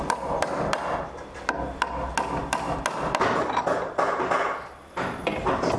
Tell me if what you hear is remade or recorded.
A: recorded